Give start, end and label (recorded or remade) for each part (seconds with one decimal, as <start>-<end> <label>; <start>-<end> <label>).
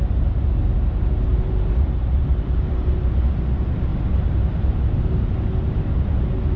0.0-1.3 recorded; 1.3-3.3 remade; 3.3-3.9 recorded; 3.9-5.4 remade; 5.4-6.6 recorded